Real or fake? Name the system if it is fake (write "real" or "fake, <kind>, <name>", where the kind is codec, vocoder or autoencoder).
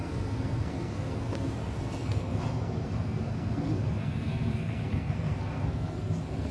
fake, codec, SNAC